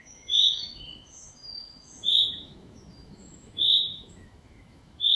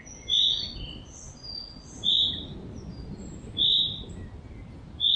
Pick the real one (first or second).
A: second